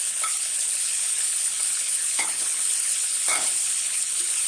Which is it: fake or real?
fake